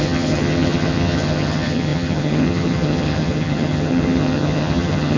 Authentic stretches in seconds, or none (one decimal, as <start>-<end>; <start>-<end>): none